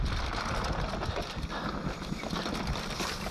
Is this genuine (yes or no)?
yes